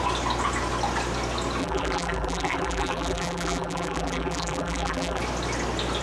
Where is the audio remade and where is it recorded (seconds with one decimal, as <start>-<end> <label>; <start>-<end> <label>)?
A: 0.0-1.6 recorded; 1.6-5.2 remade; 5.2-6.0 recorded